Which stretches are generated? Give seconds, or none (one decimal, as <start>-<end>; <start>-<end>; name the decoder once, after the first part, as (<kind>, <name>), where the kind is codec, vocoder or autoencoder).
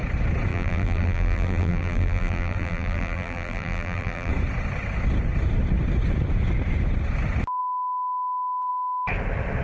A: 0.5-4.3 (vocoder, BigVGAN v2)